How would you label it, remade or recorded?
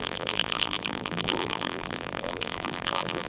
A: remade